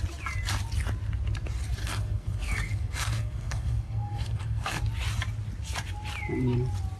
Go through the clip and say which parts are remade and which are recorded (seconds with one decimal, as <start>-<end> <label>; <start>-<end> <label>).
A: 0.0-1.8 recorded; 1.8-4.8 remade; 4.8-7.0 recorded